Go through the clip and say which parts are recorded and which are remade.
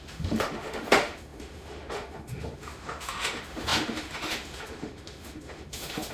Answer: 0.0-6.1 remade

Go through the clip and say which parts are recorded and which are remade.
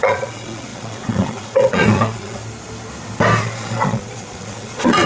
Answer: 0.0-2.4 remade; 2.4-3.4 recorded; 3.4-5.1 remade